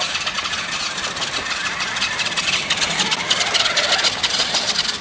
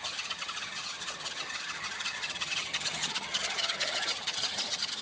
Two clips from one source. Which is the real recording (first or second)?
first